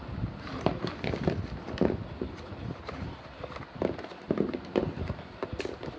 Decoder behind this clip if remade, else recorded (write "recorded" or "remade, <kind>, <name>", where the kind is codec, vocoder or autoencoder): recorded